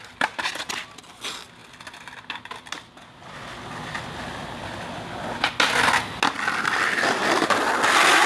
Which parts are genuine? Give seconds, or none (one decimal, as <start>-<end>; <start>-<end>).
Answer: 0.0-8.3